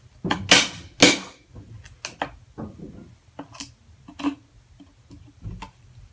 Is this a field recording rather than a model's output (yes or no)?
yes